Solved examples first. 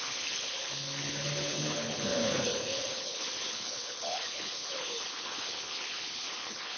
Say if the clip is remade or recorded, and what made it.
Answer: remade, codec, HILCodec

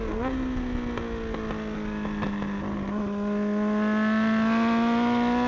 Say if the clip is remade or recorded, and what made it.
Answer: recorded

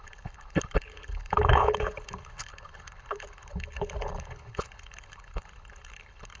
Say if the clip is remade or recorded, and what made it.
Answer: remade, codec, HILCodec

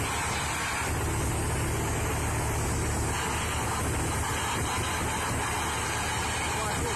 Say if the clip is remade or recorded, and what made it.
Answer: recorded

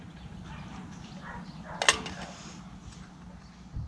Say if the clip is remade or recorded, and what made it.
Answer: recorded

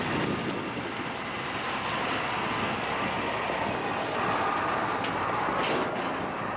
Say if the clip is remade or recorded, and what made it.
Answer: recorded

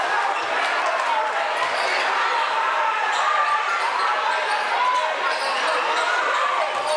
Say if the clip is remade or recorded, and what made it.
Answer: recorded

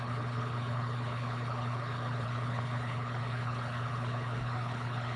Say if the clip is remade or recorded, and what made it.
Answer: remade, codec, HILCodec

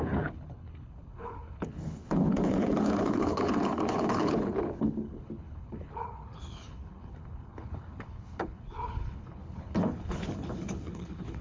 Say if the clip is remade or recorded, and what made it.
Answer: remade, codec, HILCodec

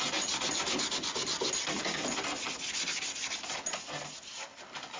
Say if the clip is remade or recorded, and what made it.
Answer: recorded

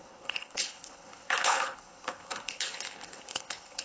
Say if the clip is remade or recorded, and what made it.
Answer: remade, codec, HILCodec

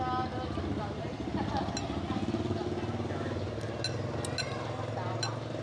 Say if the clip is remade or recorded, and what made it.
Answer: recorded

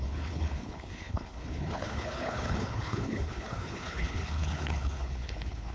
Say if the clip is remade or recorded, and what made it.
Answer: remade, codec, HILCodec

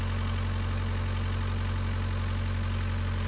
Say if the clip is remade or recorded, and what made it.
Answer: recorded